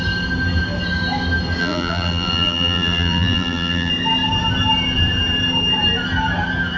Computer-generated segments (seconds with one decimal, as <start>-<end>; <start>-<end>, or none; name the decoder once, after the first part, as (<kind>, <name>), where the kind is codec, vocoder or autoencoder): 1.6-3.9 (vocoder, BigVGAN v2)